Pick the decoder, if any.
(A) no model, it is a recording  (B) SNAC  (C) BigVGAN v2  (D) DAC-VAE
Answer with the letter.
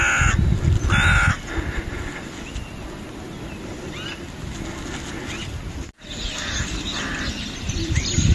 A